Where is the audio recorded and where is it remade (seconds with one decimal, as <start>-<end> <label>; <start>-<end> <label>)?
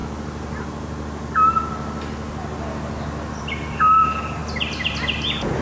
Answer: 0.0-5.6 recorded